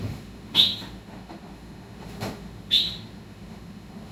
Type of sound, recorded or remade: remade